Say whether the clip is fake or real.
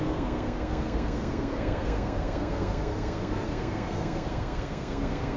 fake